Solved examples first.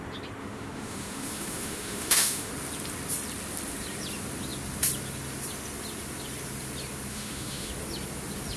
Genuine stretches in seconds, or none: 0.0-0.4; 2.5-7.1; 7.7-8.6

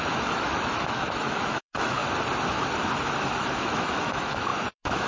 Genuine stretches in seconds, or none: 2.0-3.4

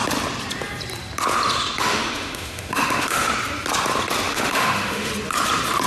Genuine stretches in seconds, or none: 0.0-1.8; 3.3-4.3; 5.1-5.9

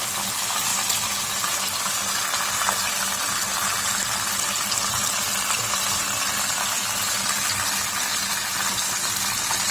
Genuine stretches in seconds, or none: 0.0-9.7

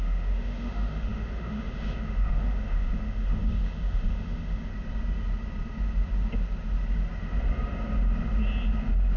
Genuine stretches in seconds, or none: 4.7-9.2